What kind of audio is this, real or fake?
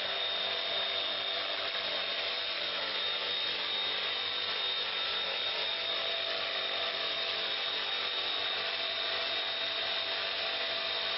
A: real